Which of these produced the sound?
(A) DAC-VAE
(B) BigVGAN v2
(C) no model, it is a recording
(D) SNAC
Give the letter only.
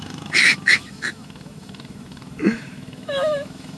A